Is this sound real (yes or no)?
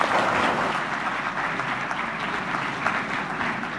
yes